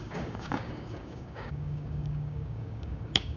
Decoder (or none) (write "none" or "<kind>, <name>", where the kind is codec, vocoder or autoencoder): codec, DAC